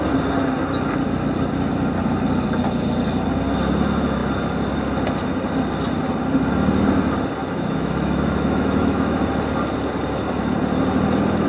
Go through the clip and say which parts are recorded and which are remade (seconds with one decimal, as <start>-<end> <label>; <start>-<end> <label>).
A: 0.0-7.4 recorded; 7.4-9.3 remade; 9.3-11.5 recorded